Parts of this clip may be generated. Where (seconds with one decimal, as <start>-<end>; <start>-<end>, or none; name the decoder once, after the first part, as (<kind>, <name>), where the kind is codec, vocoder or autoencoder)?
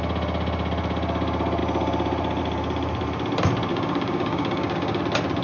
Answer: 3.7-5.0 (codec, DAC)